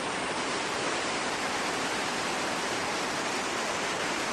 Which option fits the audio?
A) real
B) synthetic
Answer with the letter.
B